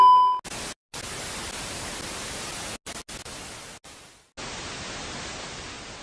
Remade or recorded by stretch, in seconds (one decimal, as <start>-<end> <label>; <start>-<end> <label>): 0.0-6.0 recorded